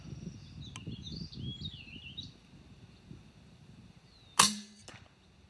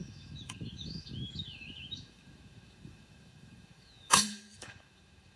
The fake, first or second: second